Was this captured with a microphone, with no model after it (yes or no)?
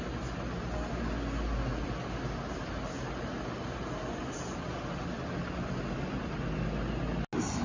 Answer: yes